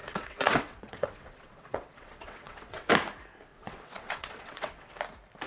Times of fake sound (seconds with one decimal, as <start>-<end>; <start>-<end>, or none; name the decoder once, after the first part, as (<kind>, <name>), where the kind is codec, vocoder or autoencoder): 0.0-2.9 (vocoder, WaveNeXt); 3.5-4.9